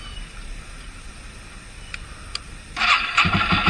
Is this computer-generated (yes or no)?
no